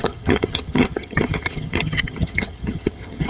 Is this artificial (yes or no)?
yes